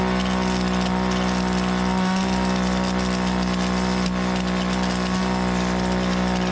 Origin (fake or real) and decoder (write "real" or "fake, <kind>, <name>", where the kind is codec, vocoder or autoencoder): real